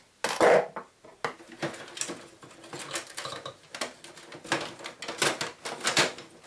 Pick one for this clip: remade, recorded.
recorded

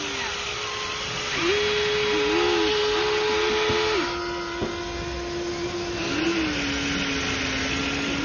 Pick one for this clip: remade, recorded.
recorded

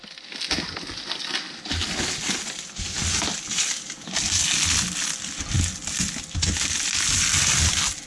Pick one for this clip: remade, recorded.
recorded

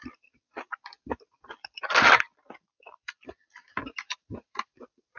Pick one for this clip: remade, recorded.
remade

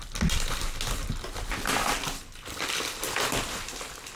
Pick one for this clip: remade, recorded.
recorded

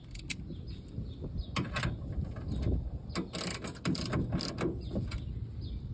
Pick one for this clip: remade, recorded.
recorded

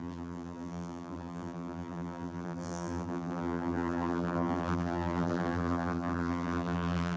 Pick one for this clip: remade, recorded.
remade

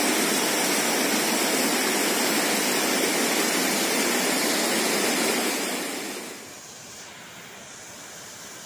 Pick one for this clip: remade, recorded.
recorded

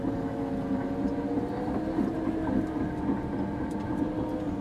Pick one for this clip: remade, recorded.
recorded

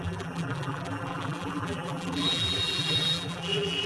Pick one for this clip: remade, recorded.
remade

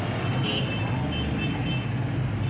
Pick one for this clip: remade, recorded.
recorded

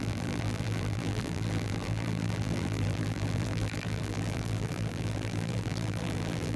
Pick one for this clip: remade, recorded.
remade